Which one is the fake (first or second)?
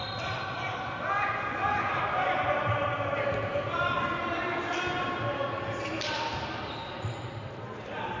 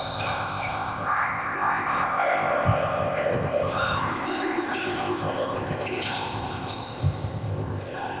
second